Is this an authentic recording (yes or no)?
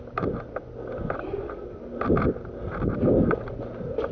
yes